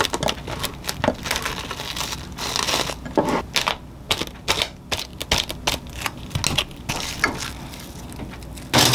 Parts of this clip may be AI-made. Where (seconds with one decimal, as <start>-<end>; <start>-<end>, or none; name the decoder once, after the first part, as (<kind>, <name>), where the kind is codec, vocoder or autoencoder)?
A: none